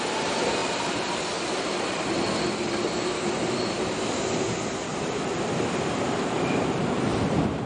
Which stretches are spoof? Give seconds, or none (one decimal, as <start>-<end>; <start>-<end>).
0.6-3.3; 4.9-7.7